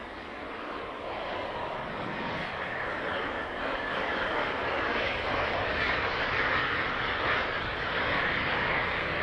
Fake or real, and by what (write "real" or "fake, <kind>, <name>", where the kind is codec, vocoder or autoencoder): fake, codec, DAC